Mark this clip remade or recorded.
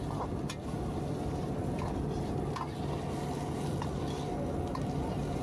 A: recorded